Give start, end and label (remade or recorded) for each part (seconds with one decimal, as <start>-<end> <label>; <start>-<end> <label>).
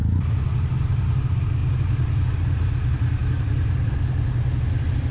0.0-3.2 recorded; 3.2-3.9 remade; 3.9-5.1 recorded